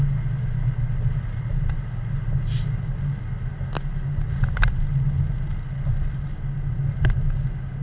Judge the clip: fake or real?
real